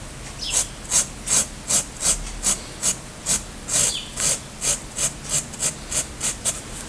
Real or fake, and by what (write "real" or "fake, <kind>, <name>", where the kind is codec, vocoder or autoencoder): real